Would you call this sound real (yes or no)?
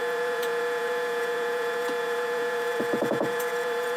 no